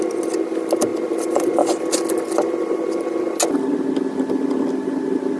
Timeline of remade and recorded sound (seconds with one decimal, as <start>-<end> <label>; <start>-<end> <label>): 0.0-5.4 recorded